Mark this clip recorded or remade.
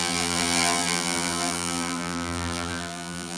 remade